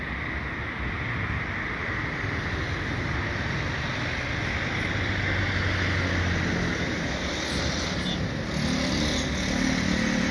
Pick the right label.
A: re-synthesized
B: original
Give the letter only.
B